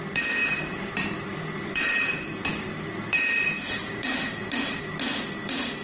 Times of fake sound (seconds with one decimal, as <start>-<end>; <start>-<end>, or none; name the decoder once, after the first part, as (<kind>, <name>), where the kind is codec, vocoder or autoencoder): 0.4-2.3 (vocoder, BigVGAN v2); 3.8-4.8